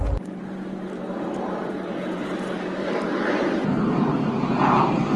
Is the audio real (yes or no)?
no